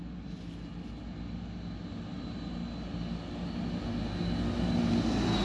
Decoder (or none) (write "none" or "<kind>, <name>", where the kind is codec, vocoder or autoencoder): none